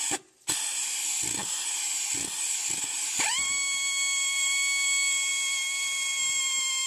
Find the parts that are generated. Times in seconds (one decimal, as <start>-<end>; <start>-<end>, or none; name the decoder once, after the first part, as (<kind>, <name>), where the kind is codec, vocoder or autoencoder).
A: none

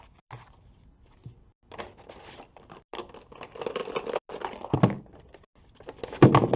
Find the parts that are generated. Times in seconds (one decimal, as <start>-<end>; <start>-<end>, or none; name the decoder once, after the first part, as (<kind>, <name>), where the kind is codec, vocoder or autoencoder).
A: none